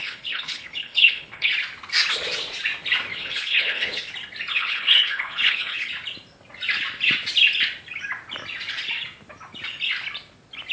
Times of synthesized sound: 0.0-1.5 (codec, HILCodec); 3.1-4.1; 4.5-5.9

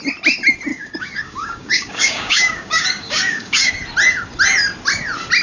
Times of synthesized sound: 0.7-3.7 (codec, DAC)

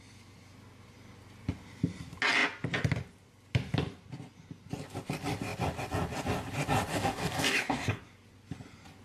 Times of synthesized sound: 6.9-8.0 (codec, DAC)